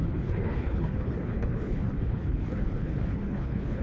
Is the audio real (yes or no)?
no